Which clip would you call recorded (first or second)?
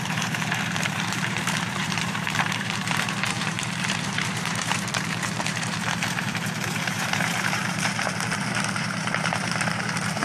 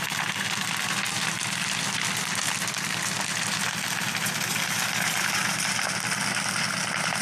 second